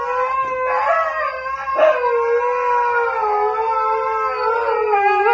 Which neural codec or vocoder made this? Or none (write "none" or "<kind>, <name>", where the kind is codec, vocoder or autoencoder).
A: none